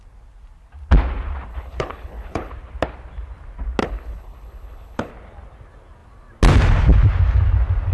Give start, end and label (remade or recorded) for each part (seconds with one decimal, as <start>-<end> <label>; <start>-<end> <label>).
0.0-1.5 recorded; 1.5-2.5 remade; 2.5-3.8 recorded; 3.8-5.1 remade; 5.1-7.9 recorded

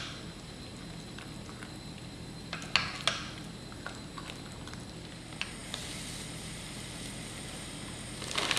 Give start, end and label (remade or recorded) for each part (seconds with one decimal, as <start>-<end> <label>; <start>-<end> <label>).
0.0-8.6 recorded

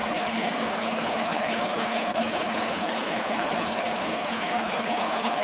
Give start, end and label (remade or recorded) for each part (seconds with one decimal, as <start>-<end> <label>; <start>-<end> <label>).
0.0-5.4 remade

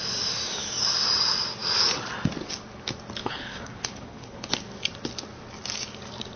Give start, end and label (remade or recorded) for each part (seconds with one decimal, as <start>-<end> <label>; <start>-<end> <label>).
0.0-3.2 recorded; 3.2-4.5 remade; 4.5-6.4 recorded

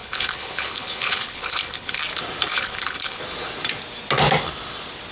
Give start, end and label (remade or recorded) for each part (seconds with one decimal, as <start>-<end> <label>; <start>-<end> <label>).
0.0-2.0 remade; 2.0-2.5 recorded; 2.5-3.2 remade; 3.2-5.1 recorded

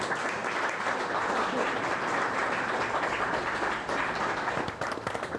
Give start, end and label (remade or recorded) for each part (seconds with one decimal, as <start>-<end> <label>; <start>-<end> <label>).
0.0-5.4 recorded

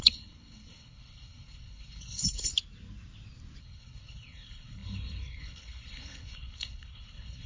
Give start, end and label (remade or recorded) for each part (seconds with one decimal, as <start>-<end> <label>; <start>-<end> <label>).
0.0-2.5 remade; 2.5-3.6 recorded; 3.6-7.5 remade